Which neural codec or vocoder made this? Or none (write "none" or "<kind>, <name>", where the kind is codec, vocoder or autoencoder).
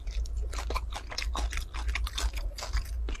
none